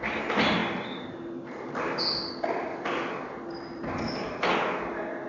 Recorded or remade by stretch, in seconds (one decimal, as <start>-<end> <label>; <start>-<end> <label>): 0.0-5.3 recorded